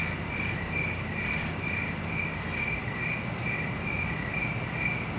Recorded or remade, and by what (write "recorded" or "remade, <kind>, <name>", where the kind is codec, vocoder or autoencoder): recorded